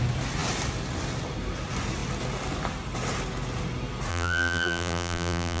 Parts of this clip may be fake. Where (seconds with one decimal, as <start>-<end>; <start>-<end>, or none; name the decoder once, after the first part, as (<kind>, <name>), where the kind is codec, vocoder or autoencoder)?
4.1-5.6 (vocoder, BigVGAN v2)